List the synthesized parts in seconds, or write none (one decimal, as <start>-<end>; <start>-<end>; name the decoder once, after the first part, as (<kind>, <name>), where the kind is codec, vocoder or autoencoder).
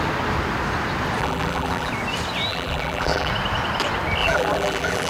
1.2-1.9 (vocoder, BigVGAN v2); 2.5-3.3; 4.2-5.1